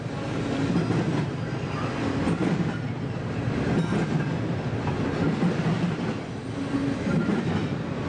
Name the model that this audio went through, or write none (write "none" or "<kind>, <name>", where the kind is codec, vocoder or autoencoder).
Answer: none